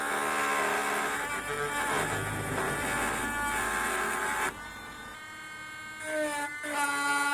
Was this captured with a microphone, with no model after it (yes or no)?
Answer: yes